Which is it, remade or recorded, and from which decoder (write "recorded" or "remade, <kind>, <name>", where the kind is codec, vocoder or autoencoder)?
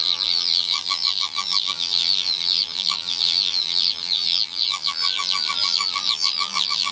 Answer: remade, vocoder, BigVGAN v2